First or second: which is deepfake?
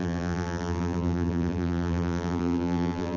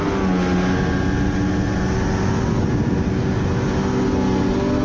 first